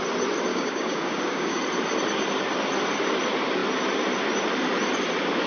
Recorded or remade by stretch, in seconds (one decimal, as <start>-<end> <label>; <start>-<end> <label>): 0.0-0.5 recorded; 0.5-1.6 remade; 1.6-5.5 recorded